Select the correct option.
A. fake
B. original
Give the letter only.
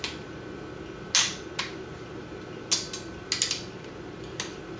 B